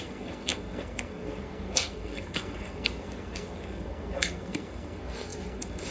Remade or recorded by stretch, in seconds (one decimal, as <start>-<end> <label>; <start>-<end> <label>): 0.0-5.9 remade